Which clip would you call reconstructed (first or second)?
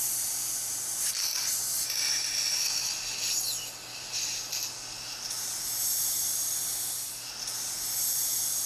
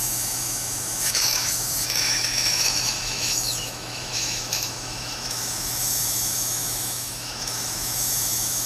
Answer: second